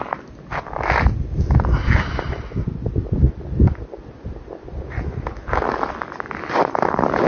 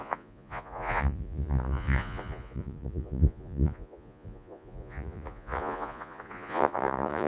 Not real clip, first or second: second